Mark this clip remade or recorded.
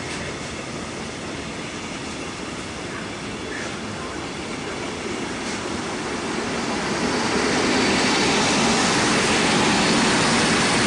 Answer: recorded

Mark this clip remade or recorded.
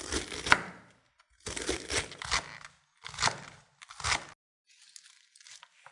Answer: recorded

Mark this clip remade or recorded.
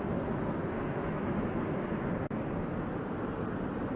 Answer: recorded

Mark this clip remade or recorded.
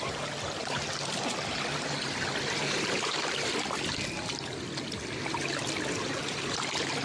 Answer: recorded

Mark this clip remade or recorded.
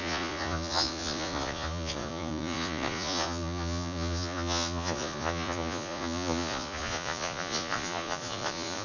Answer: remade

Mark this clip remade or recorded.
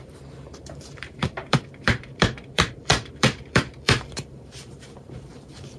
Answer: remade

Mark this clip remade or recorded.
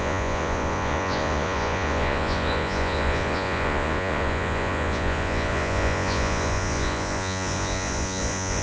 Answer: remade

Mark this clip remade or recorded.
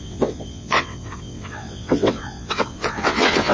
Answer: remade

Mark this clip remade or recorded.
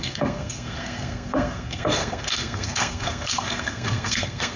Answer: remade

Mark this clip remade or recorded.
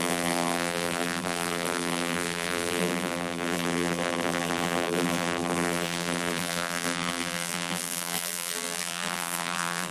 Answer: remade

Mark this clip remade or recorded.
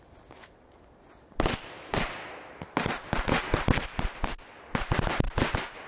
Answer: recorded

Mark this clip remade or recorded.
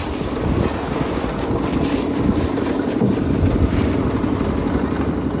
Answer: recorded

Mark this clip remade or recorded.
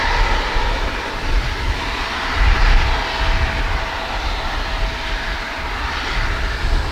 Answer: recorded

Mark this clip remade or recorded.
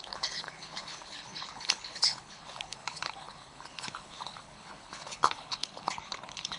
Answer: remade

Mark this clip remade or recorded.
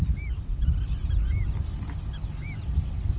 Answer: recorded